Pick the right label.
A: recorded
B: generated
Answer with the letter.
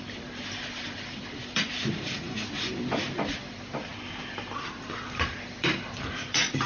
B